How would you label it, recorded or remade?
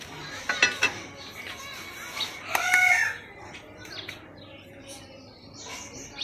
recorded